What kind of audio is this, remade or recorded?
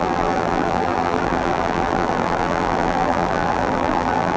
remade